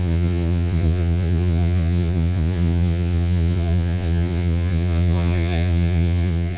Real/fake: fake